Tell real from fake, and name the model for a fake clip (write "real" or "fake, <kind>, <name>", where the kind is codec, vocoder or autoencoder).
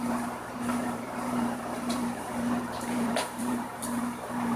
fake, vocoder, BigVGAN v2